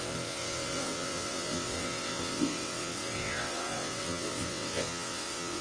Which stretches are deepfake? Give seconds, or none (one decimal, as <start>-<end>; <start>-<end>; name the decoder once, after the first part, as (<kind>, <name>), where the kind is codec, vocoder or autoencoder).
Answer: 0.0-5.6 (vocoder, WaveNeXt)